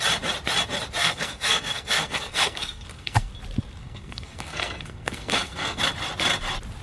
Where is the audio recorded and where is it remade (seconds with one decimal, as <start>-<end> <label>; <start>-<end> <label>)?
0.0-1.0 recorded; 1.0-3.3 remade; 3.3-3.8 recorded; 3.8-5.8 remade; 5.8-6.8 recorded